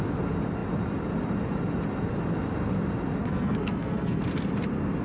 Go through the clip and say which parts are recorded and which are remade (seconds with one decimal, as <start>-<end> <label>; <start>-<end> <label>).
0.0-3.2 recorded; 3.2-4.2 remade; 4.2-5.0 recorded